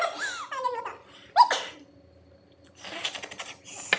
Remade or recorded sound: recorded